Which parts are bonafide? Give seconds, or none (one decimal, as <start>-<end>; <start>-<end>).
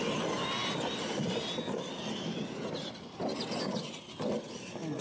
0.0-5.0